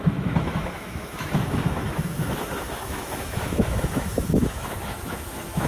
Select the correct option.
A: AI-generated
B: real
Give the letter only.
A